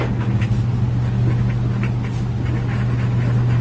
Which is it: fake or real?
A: real